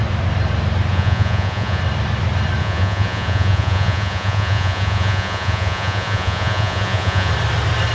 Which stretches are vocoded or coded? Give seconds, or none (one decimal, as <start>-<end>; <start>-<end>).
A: 0.9-1.8; 2.6-7.3